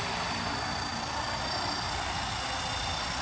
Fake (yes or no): no